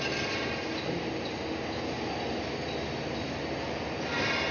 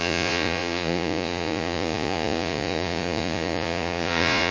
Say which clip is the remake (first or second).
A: second